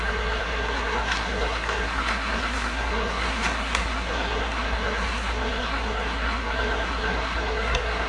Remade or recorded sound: remade